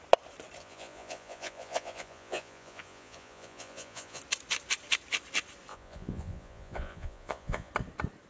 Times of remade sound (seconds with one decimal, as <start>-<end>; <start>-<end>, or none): 0.6-4.2; 5.7-7.7